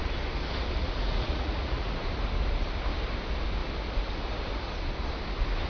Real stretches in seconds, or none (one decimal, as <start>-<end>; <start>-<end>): 0.0-0.8; 2.1-5.7